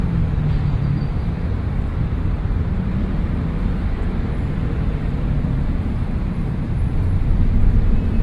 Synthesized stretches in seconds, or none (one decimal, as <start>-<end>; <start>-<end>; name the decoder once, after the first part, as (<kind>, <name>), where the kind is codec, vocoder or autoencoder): 2.0-6.7 (vocoder, BigVGAN v2)